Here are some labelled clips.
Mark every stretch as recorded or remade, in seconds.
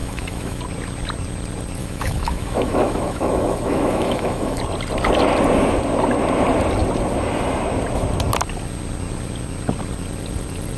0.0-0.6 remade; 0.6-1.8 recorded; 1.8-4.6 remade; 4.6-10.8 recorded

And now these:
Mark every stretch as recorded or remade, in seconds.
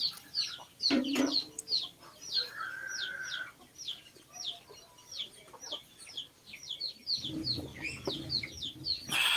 0.0-9.4 recorded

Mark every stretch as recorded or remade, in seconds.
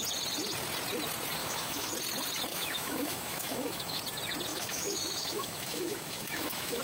0.0-1.4 recorded; 1.4-1.9 remade; 1.9-2.5 recorded; 2.5-4.0 remade; 4.0-4.5 recorded; 4.5-6.8 remade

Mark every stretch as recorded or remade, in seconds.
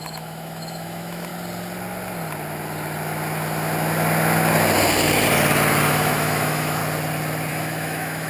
0.0-1.3 remade; 1.3-5.9 recorded; 5.9-6.8 remade; 6.8-7.5 recorded; 7.5-8.3 remade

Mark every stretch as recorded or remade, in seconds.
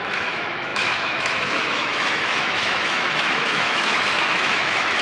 0.0-5.0 remade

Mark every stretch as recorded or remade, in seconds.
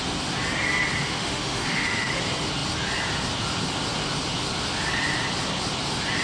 0.0-1.0 recorded; 1.0-2.2 remade; 2.2-6.2 recorded